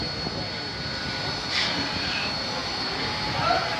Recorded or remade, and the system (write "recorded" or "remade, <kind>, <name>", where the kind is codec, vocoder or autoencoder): recorded